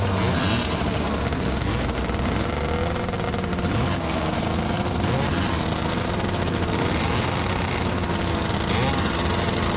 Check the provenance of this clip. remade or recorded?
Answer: recorded